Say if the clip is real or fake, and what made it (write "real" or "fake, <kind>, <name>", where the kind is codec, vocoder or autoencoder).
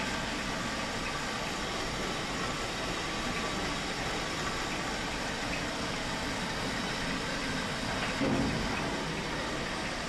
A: real